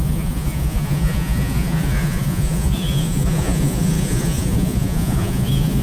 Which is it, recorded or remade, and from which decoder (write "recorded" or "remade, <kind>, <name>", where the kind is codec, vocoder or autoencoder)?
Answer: remade, vocoder, Vocos